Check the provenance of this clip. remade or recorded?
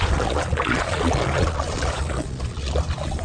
remade